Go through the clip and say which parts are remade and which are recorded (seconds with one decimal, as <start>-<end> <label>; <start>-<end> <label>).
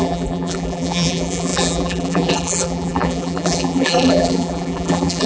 0.0-5.3 remade